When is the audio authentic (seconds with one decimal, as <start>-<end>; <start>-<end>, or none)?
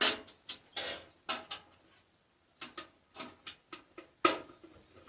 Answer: 0.0-5.1